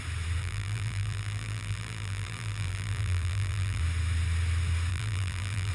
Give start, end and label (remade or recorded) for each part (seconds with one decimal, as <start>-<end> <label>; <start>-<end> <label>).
0.0-0.4 recorded; 0.4-3.8 remade; 3.8-4.9 recorded; 4.9-5.7 remade